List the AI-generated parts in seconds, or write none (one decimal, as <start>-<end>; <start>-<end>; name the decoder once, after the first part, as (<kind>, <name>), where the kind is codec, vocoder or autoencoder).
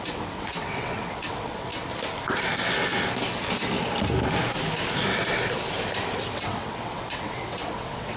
0.0-1.7 (vocoder, WaveNeXt); 6.3-8.2